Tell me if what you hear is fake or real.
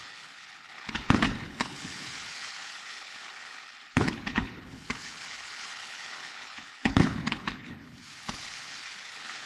fake